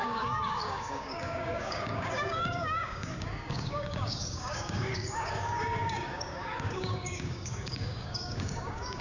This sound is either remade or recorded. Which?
remade